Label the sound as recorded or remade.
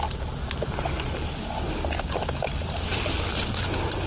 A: recorded